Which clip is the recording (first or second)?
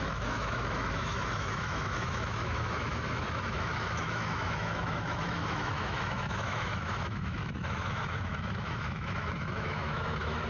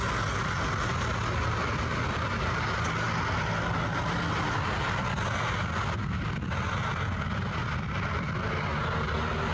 second